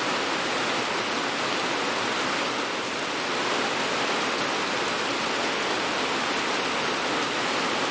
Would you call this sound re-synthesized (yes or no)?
no